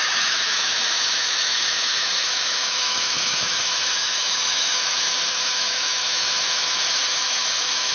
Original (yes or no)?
no